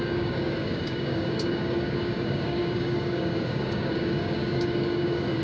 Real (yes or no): no